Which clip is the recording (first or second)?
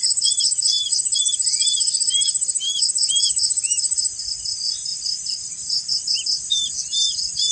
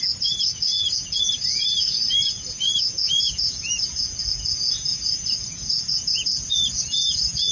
first